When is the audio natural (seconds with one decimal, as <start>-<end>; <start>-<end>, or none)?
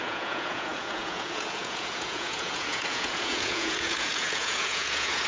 none